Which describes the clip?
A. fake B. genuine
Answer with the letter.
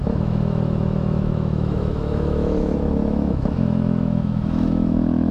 A